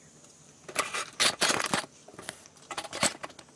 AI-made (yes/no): no